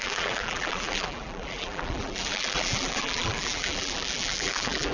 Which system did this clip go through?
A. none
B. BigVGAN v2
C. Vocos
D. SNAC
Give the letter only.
B